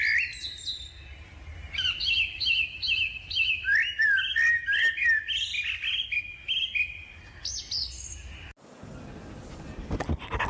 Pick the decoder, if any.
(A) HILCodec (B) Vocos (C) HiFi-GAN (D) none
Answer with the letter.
D